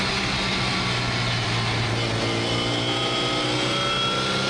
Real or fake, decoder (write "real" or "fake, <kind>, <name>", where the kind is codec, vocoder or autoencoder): real